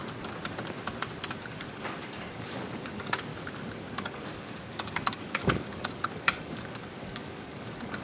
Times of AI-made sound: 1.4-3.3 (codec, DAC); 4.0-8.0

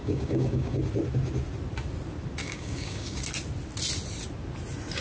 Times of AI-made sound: 0.0-0.8 (codec, DAC); 2.4-3.2

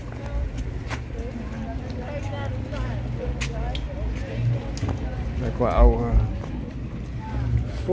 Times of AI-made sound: none

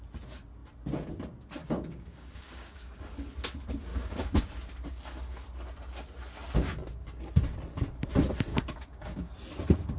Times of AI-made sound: 1.6-3.0 (codec, DAC); 3.9-4.4; 8.5-9.3

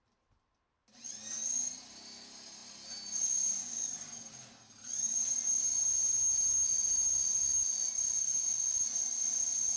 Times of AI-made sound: none

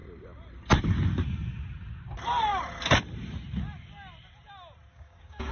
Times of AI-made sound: 4.9-5.5 (codec, DAC)